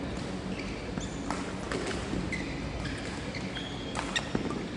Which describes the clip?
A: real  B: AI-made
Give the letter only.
A